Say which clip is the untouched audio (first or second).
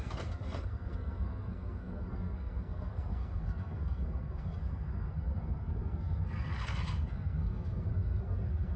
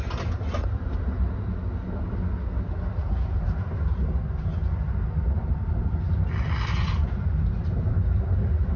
second